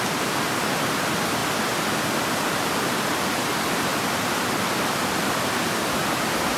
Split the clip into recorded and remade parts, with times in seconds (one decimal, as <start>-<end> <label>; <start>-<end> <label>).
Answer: 0.0-3.9 recorded; 3.9-5.7 remade; 5.7-6.6 recorded